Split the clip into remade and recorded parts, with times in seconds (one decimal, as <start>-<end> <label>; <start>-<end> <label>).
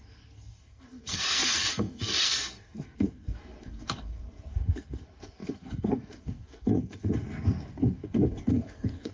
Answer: 0.0-9.1 remade